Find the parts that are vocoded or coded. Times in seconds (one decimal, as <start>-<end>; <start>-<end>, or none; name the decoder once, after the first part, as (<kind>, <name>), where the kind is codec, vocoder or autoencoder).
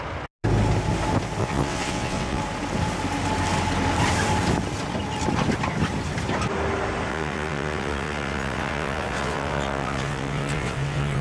1.4-2.4 (vocoder, WaveNeXt); 7.1-11.2